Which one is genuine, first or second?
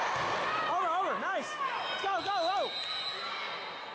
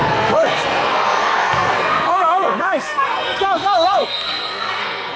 first